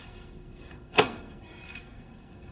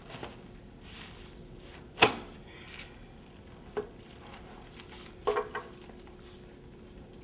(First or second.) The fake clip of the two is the first